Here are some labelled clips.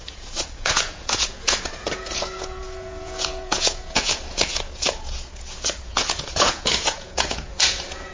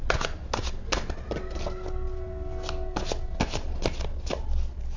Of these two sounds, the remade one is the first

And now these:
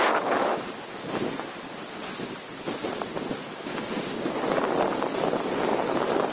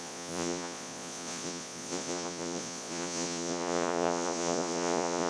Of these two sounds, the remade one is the second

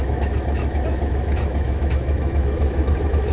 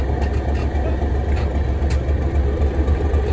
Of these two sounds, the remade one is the first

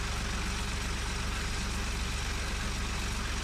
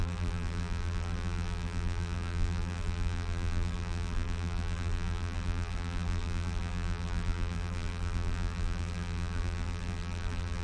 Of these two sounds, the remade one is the second